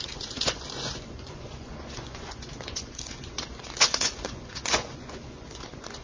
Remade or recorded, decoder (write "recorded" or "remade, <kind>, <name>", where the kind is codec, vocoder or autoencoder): remade, vocoder, Vocos